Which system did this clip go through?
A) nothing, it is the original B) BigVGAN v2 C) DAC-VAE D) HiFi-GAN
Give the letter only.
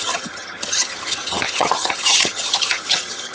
D